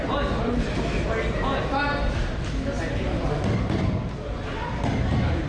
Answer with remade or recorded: recorded